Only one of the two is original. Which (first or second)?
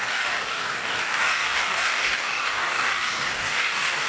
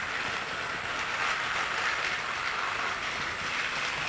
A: second